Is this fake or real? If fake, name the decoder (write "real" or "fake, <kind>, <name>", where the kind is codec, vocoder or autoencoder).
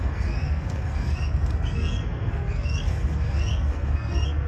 fake, codec, SNAC